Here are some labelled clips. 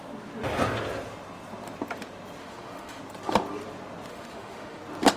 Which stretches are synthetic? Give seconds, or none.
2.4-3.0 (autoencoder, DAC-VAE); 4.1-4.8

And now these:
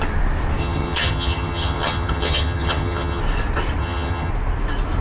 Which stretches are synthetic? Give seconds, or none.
0.6-3.2 (vocoder, HiFi-GAN); 3.8-4.3

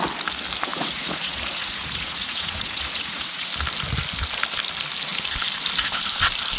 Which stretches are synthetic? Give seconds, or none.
0.7-3.5 (vocoder, Vocos)

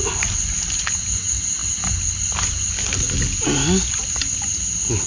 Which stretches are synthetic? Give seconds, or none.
none

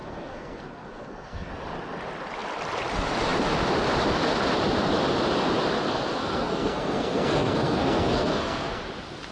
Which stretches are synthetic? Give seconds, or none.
0.0-1.5 (codec, SNAC); 6.2-8.8

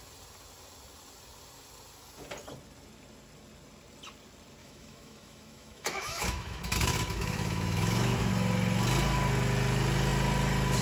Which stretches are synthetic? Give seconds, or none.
4.6-8.3 (autoencoder, DAC-VAE)

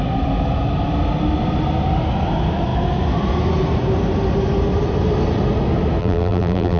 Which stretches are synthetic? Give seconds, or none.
6.0-6.8 (vocoder, BigVGAN v2)